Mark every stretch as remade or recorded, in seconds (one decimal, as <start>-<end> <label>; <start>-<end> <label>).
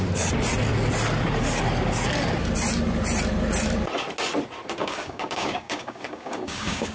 0.0-4.8 recorded; 4.8-6.9 remade